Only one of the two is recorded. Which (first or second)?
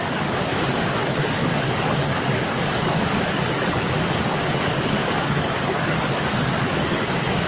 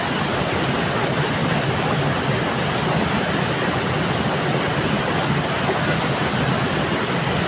second